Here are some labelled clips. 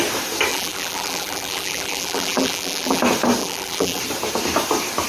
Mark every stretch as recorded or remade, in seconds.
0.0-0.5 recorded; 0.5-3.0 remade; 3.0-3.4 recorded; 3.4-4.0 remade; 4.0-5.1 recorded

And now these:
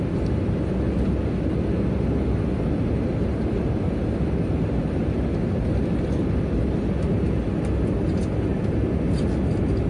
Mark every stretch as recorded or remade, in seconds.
0.0-9.9 recorded

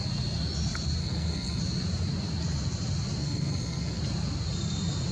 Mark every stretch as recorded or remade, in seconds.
0.0-1.0 recorded; 1.0-1.6 remade; 1.6-3.2 recorded; 3.2-4.0 remade; 4.0-5.1 recorded

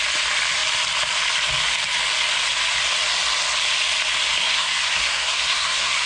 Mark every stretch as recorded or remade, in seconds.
0.0-4.4 recorded; 4.4-6.1 remade

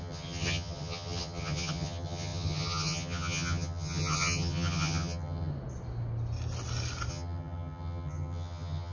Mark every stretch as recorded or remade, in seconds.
0.0-5.5 remade; 5.5-7.1 recorded; 7.1-8.9 remade

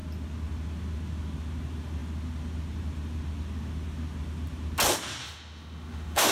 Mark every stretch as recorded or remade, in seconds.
0.0-5.2 recorded; 5.2-6.3 remade